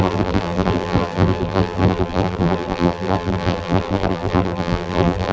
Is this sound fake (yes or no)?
yes